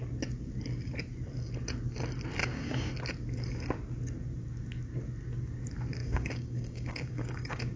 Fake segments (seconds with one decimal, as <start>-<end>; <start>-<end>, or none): 2.4-2.9; 6.0-7.8